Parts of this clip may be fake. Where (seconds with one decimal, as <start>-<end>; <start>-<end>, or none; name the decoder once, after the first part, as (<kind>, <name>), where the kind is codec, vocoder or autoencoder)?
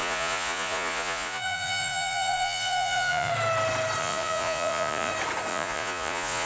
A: 0.0-3.3 (vocoder, Vocos); 4.0-5.1; 5.5-6.5